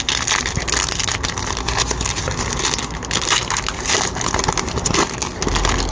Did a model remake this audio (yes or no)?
no